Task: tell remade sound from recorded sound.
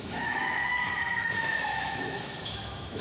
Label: remade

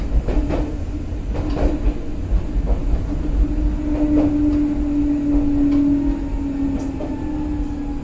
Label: recorded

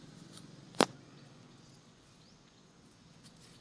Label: remade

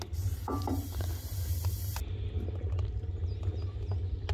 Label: recorded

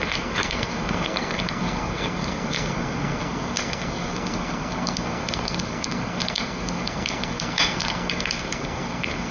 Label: remade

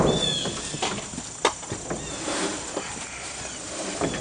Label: recorded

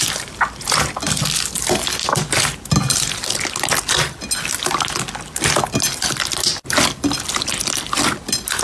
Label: recorded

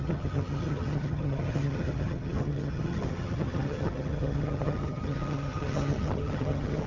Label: remade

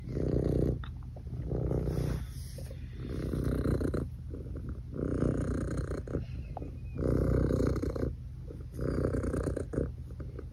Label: recorded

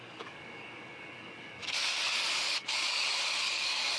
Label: remade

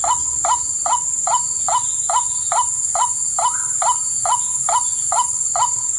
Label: recorded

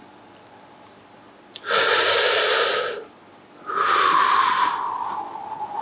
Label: recorded